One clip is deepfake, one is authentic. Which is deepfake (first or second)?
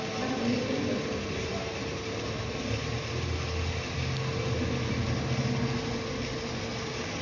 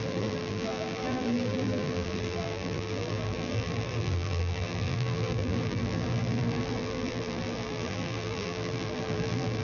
second